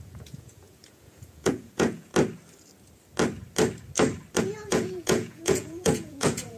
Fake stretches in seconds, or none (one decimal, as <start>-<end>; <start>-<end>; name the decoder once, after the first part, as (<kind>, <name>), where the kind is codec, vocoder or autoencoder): 0.0-2.1 (vocoder, Vocos); 4.4-6.6